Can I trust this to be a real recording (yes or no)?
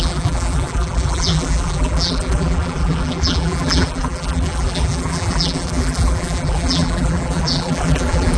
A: no